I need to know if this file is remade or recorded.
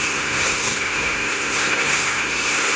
remade